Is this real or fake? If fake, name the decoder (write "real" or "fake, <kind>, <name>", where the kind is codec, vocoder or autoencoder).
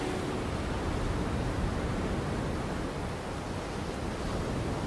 real